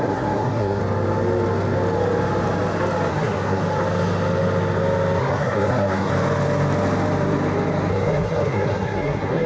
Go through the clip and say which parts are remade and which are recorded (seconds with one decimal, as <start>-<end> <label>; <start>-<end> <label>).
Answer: 0.0-0.8 remade; 0.8-3.1 recorded; 3.1-3.6 remade; 3.6-5.2 recorded; 5.2-6.1 remade; 6.1-7.9 recorded; 7.9-9.5 remade